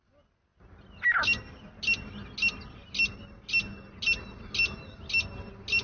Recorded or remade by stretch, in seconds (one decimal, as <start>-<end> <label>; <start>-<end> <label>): 0.0-5.8 recorded

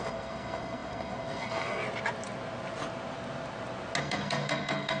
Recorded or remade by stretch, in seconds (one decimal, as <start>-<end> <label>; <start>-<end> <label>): 0.0-1.8 remade; 1.8-4.0 recorded; 4.0-5.0 remade

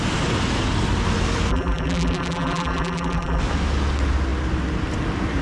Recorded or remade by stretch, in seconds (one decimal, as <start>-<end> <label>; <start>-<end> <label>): 0.0-1.5 recorded; 1.5-3.4 remade; 3.4-5.4 recorded

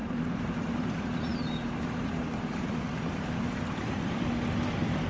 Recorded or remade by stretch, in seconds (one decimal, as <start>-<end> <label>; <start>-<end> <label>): 0.0-0.9 remade; 0.9-1.3 recorded; 1.3-4.0 remade; 4.0-5.1 recorded